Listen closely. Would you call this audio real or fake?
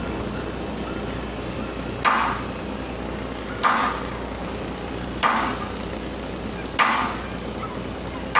real